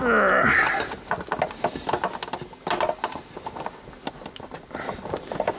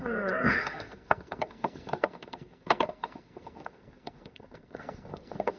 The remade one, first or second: second